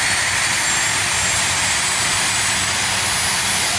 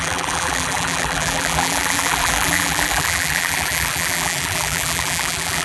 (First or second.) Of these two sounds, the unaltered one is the first